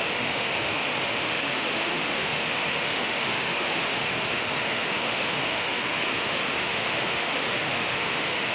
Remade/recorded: remade